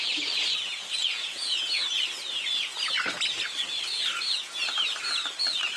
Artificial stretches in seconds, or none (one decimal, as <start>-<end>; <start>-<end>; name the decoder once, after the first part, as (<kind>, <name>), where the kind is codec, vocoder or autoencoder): 1.0-1.8 (vocoder, Vocos)